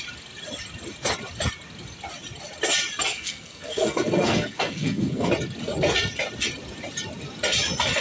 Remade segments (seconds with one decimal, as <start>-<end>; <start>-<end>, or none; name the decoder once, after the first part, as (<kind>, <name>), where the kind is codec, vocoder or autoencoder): 3.1-5.3 (codec, SNAC)